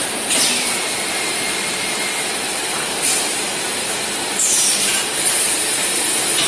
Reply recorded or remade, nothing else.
remade